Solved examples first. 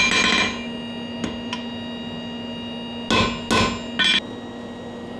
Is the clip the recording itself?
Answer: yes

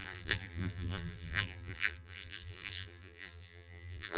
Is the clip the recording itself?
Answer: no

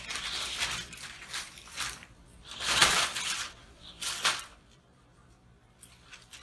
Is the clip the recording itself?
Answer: no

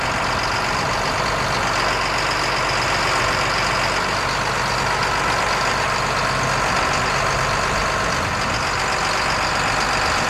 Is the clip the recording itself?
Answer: yes